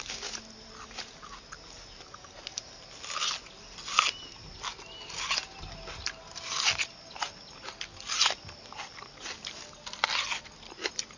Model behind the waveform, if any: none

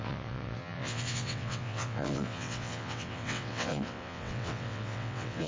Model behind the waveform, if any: vocoder, WaveNeXt